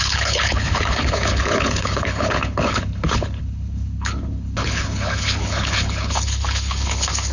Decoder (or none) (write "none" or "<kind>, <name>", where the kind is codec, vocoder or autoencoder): codec, HILCodec